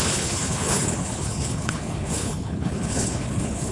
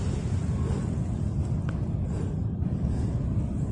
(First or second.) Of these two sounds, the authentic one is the second